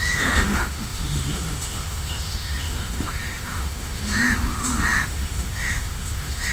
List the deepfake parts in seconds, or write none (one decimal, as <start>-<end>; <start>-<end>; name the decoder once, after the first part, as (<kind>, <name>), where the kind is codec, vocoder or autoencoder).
0.0-6.5 (autoencoder, DAC-VAE)